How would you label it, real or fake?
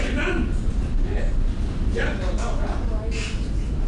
real